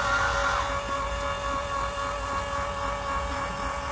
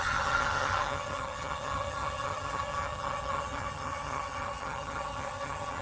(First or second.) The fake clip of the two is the second